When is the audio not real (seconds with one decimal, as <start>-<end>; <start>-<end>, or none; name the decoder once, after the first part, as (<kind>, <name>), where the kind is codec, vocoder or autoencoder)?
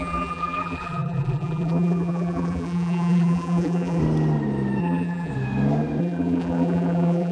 0.0-4.0 (vocoder, BigVGAN v2); 4.8-5.3; 6.0-7.3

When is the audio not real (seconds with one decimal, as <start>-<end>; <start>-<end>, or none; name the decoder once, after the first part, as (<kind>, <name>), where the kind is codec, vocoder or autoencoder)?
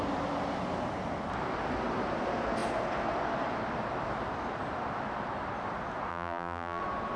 6.1-6.8 (vocoder, BigVGAN v2)